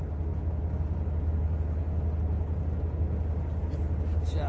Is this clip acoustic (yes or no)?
yes